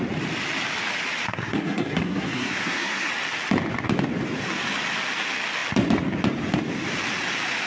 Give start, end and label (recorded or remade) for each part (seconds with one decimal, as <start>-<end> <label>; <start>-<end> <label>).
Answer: 0.0-1.3 recorded; 1.3-3.1 remade; 3.1-7.7 recorded

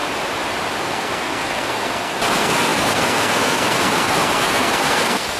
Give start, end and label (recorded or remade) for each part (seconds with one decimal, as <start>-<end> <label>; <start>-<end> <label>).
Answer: 0.0-0.8 recorded; 0.8-5.4 remade

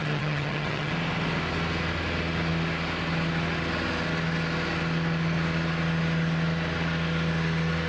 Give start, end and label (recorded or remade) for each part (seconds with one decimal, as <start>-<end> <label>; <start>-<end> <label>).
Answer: 0.0-0.9 remade; 0.9-7.9 recorded

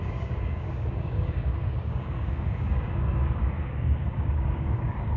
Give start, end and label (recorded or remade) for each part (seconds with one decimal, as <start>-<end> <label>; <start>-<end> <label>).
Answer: 0.0-5.2 remade

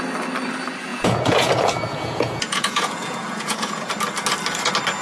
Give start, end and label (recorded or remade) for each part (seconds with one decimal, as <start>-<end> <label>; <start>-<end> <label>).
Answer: 0.0-0.9 recorded; 0.9-3.9 remade; 3.9-5.0 recorded

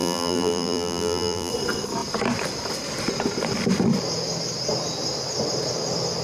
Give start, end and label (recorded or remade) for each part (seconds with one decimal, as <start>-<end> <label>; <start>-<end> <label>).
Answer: 0.0-1.5 remade; 1.5-6.2 recorded

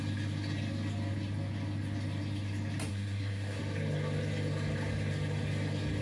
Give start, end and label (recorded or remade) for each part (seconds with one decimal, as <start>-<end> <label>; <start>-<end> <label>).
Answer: 0.0-2.9 recorded; 2.9-3.6 remade; 3.6-6.0 recorded

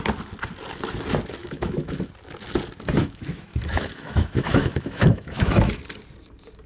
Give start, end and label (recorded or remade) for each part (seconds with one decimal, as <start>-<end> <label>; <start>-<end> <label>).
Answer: 0.0-1.4 recorded; 1.4-2.1 remade; 2.1-3.0 recorded; 3.0-5.8 remade; 5.8-6.7 recorded